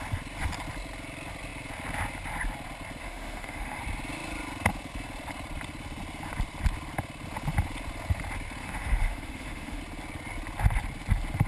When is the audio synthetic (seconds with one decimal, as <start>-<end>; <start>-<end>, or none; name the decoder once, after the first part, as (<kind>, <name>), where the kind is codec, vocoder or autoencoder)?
3.0-3.8 (autoencoder, DAC-VAE); 8.6-9.8